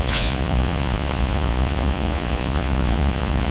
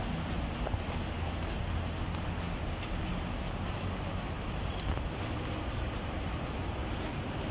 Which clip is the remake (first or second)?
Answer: first